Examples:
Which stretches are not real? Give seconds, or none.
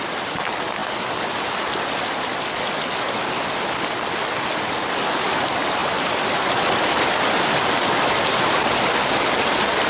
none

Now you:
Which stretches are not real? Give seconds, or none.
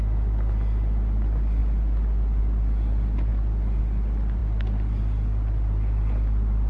none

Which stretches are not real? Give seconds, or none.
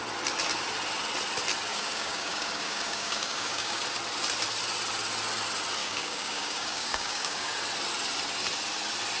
1.7-3.8 (codec, DAC); 5.8-7.5